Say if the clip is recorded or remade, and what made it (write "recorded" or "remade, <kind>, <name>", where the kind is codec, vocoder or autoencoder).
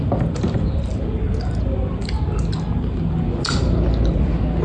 recorded